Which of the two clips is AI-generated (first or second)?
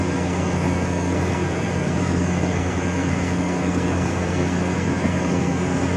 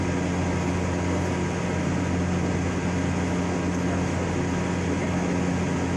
first